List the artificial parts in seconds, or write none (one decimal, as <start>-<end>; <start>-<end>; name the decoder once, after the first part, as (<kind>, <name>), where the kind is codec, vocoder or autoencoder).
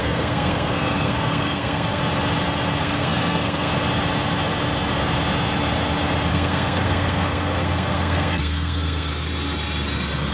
0.0-2.0 (codec, SNAC); 2.8-3.7; 6.3-9.1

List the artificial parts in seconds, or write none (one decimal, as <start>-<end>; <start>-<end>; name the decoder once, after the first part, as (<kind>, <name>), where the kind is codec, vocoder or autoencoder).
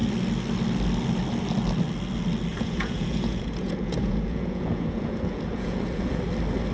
2.5-6.2 (vocoder, Vocos)